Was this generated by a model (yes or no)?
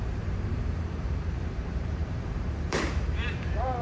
yes